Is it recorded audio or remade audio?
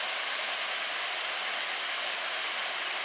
recorded